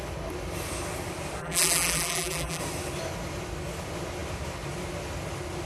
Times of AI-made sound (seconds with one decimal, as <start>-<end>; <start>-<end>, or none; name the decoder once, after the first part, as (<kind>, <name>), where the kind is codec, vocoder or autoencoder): 1.4-2.6 (vocoder, BigVGAN v2)